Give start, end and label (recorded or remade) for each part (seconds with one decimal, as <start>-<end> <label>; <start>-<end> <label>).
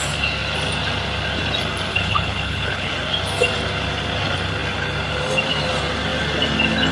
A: 0.0-1.9 recorded; 1.9-2.9 remade; 2.9-6.9 recorded